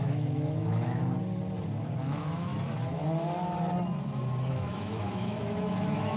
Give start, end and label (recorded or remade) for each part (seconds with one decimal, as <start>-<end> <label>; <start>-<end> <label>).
0.0-1.0 remade; 1.0-2.0 recorded; 2.0-2.5 remade; 2.5-4.5 recorded; 4.5-6.2 remade